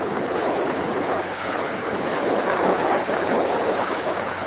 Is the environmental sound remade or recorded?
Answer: remade